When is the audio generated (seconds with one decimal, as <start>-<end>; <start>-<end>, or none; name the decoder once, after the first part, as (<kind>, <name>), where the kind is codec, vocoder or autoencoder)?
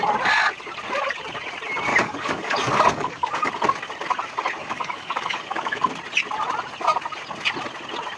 1.9-3.5 (codec, DAC); 4.6-5.9